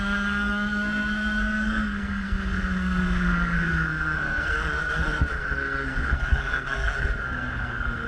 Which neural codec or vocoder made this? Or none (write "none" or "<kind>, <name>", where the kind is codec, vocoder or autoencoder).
codec, SNAC